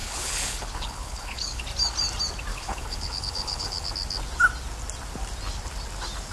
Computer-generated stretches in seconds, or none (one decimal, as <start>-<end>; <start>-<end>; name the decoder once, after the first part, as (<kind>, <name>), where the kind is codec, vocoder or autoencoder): 0.0-1.6 (codec, HILCodec); 2.5-3.9